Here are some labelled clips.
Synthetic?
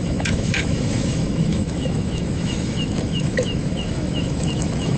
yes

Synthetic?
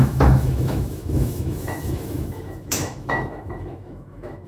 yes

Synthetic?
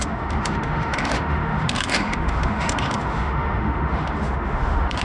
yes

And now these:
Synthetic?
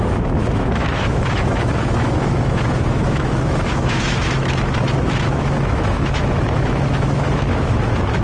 yes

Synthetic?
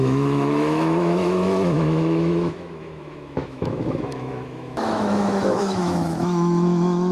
yes